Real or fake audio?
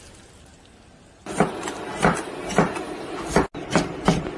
real